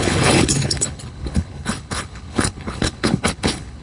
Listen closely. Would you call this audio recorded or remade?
remade